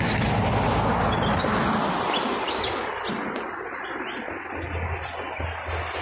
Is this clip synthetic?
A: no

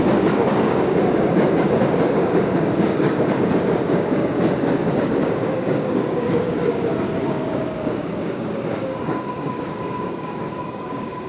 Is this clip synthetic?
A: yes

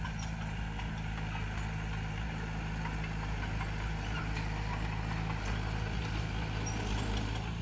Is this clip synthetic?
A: no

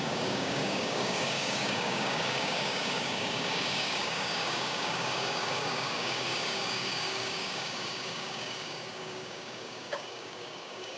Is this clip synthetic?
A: yes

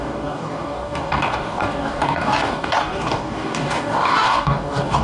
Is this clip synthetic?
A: yes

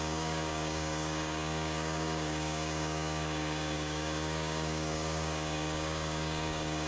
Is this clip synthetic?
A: yes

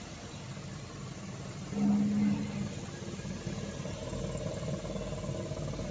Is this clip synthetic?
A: no